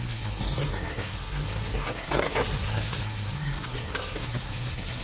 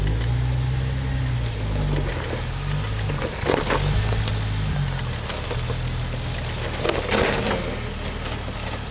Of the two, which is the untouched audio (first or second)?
second